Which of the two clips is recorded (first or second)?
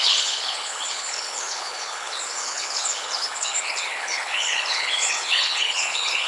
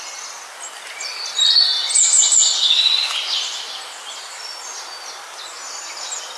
second